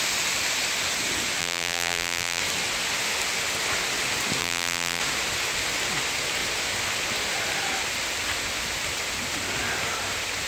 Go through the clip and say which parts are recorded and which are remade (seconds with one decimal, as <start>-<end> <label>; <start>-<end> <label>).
0.0-1.4 recorded; 1.4-2.4 remade; 2.4-4.4 recorded; 4.4-5.0 remade; 5.0-10.5 recorded